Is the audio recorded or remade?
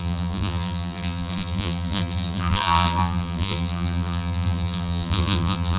remade